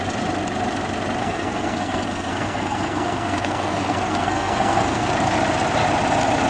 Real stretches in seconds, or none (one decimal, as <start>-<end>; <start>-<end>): 0.0-1.2; 5.1-6.5